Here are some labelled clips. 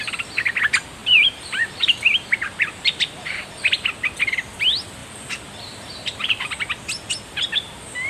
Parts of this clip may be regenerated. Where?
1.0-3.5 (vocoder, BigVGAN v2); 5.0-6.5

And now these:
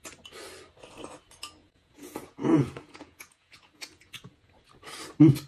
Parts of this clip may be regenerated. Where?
1.6-4.5 (vocoder, Vocos)

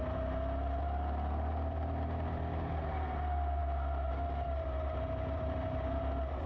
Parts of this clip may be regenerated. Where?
none

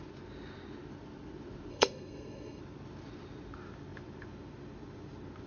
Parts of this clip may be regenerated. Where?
1.7-2.6 (codec, SNAC)

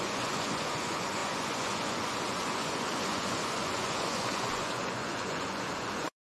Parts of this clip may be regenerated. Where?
0.0-6.4 (vocoder, Vocos)

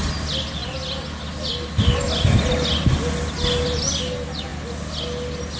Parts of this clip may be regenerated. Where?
none

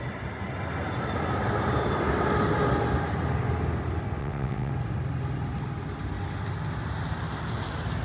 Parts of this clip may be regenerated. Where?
4.2-4.7 (vocoder, WaveNeXt)

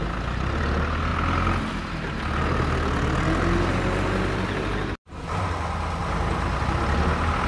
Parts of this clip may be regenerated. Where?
none